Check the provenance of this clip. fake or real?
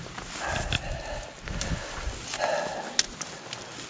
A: real